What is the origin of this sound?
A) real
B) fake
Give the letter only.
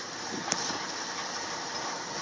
B